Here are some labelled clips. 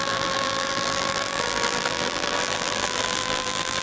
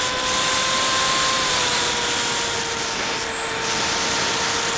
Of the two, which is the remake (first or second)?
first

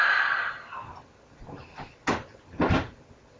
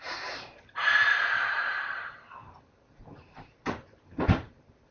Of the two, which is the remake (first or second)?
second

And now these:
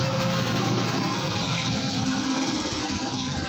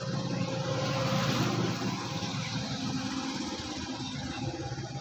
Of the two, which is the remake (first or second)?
first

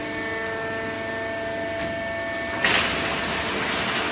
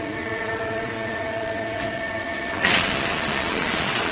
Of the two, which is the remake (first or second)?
second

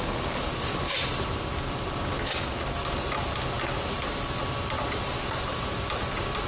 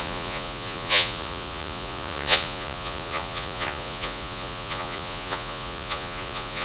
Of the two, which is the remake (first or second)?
second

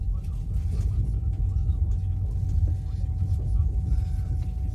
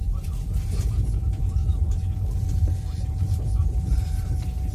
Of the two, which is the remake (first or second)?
second